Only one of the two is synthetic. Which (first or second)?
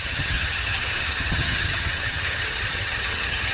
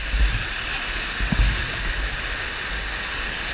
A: first